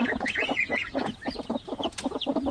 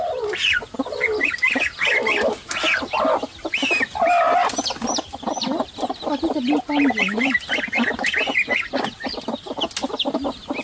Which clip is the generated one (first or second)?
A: first